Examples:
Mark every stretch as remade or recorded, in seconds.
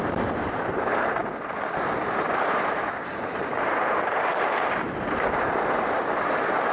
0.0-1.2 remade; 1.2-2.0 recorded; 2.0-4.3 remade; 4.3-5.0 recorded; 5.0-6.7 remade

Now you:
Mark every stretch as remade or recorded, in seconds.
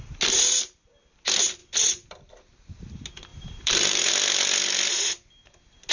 0.0-1.6 recorded; 1.6-2.4 remade; 2.4-3.3 recorded; 3.3-4.1 remade; 4.1-5.9 recorded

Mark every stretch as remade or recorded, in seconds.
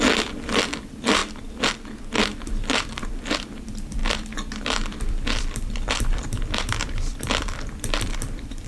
0.0-1.2 remade; 1.2-2.1 recorded; 2.1-8.7 remade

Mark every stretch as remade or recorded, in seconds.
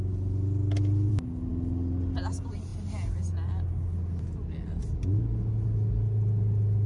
0.0-6.9 recorded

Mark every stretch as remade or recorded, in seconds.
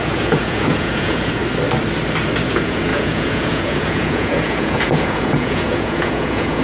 0.0-1.4 remade; 1.4-2.5 recorded; 2.5-6.6 remade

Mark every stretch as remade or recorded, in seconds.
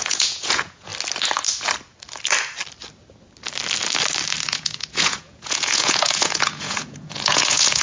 0.0-0.9 remade; 0.9-4.5 recorded; 4.5-7.8 remade